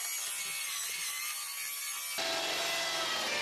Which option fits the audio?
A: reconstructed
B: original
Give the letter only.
B